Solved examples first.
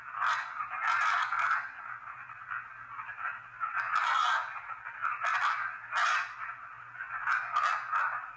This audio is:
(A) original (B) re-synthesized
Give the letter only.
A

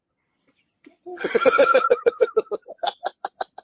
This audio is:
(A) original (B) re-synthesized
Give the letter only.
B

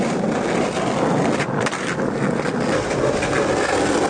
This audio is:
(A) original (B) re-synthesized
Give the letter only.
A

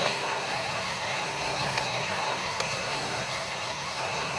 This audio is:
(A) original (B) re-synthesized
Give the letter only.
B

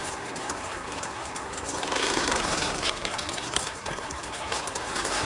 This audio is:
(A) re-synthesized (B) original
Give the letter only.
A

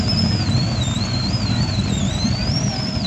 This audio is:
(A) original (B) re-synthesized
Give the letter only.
A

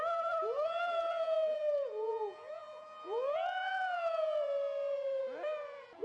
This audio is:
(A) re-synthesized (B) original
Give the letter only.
A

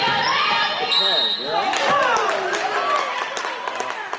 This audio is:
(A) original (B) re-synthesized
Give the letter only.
A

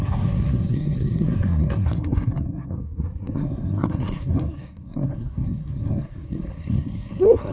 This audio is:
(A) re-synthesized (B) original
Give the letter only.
A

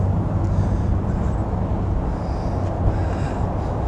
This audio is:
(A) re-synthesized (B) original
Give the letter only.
B